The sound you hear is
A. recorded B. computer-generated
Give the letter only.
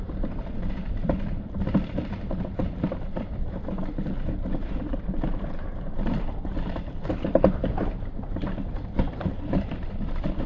B